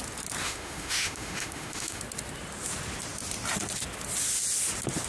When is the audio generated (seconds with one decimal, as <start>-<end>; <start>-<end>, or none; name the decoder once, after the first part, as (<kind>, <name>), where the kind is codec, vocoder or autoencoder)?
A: 0.4-2.0 (autoencoder, DAC-VAE)